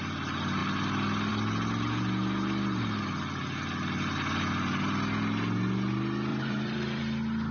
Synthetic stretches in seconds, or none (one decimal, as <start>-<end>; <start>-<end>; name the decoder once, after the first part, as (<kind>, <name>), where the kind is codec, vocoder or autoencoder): 6.3-7.0 (vocoder, BigVGAN v2)